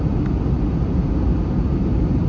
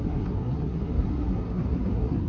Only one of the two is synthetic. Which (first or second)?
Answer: second